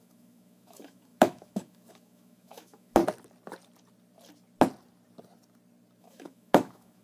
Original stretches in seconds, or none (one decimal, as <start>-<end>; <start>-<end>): 3.0-6.0